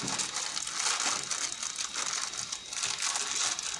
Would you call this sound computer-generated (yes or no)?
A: no